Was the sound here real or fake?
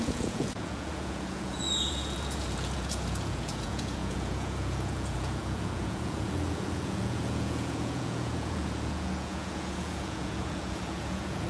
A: fake